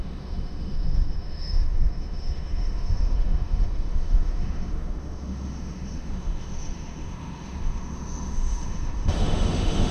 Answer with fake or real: fake